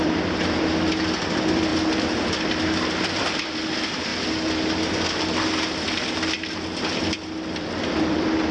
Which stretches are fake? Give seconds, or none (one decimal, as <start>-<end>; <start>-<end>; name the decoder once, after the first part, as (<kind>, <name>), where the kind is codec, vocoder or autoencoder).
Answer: 0.0-1.7 (vocoder, BigVGAN v2); 2.5-4.1; 5.2-8.5